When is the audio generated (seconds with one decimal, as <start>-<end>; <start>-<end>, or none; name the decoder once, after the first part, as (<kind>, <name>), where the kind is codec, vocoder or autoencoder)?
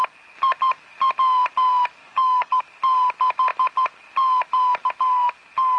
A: 2.0-2.6 (codec, DAC)